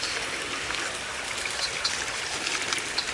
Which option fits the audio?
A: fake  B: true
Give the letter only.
B